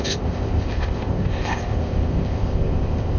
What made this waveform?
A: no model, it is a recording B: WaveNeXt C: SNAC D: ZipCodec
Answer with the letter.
D